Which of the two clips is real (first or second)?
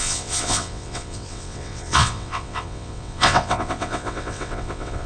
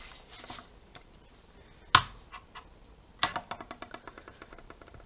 second